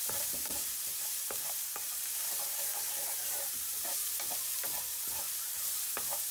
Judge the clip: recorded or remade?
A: remade